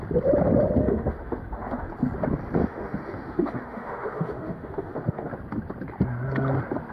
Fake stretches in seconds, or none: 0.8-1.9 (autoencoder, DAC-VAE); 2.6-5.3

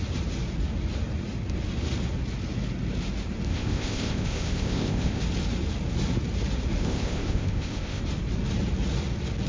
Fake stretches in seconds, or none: 3.5-5.2 (codec, ZipCodec); 6.8-8.0

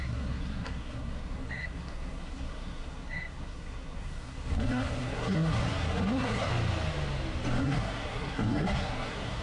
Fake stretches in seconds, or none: 0.0-6.5 (codec, SNAC); 7.6-9.4

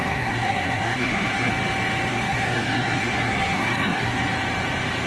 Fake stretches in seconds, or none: 0.0-1.5 (codec, SNAC); 2.1-4.2

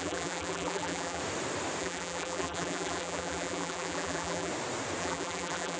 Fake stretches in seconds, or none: 0.0-1.2 (vocoder, BigVGAN v2); 1.8-4.5; 5.0-5.8